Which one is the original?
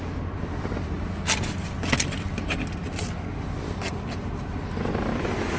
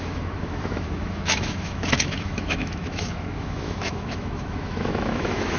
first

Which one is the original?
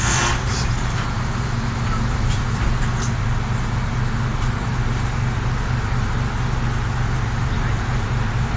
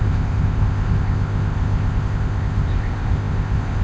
first